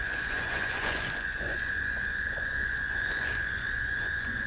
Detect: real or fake fake